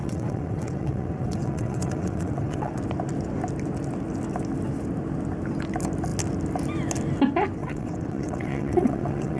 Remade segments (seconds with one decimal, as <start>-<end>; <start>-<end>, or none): 0.0-2.8; 7.6-9.4